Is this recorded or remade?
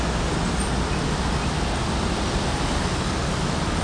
recorded